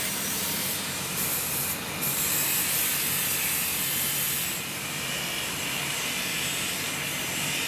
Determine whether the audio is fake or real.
fake